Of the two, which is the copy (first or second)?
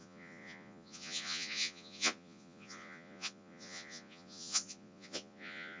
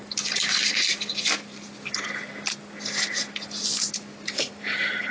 first